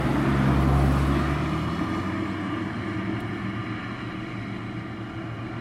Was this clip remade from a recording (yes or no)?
no